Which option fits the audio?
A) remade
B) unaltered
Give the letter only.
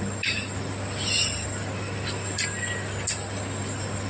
B